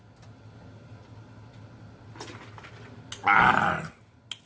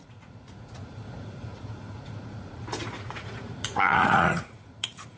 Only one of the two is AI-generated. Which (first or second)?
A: second